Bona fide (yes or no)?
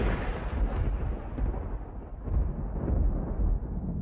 yes